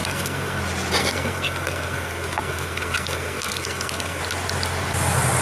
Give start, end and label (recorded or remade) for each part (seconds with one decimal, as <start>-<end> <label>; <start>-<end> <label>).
0.0-0.6 remade; 0.6-1.0 recorded; 1.0-4.2 remade; 4.2-5.4 recorded